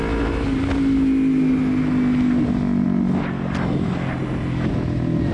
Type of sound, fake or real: real